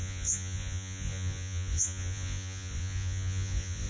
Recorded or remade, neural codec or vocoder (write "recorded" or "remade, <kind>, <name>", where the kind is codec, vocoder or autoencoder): remade, vocoder, Vocos